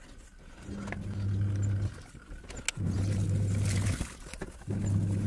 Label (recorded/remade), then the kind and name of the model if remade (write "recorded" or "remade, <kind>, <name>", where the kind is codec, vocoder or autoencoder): recorded